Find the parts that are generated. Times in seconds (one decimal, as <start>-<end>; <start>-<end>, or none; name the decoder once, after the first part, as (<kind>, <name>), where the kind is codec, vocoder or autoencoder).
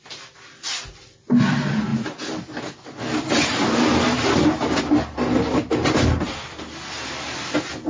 none